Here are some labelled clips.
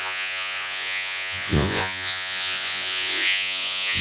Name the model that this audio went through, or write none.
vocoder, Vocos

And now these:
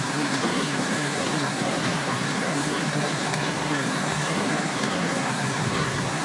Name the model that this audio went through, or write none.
codec, SNAC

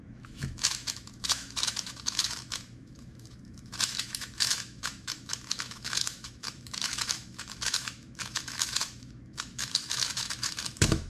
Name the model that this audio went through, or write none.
autoencoder, DAC-VAE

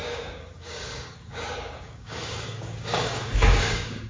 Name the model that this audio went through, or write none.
codec, DAC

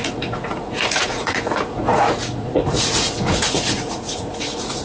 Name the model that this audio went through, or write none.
vocoder, Vocos